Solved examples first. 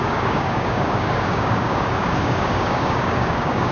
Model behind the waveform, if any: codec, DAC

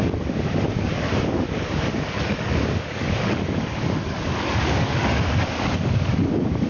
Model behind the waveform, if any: codec, DAC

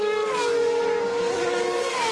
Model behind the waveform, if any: codec, DAC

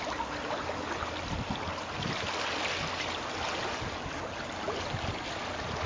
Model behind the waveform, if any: none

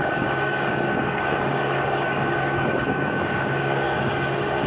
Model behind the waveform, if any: codec, DAC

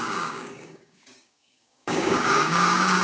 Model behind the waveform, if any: codec, DAC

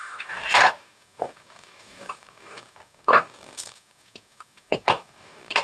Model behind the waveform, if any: codec, DAC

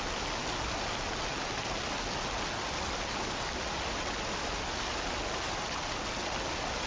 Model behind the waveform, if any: none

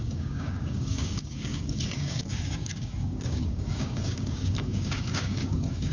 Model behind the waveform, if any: codec, DAC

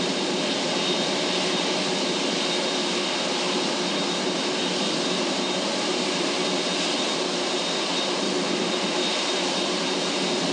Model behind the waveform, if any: none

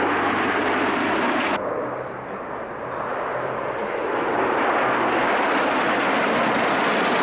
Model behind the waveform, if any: none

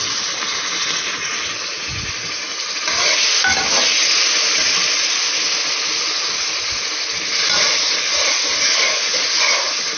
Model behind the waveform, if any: none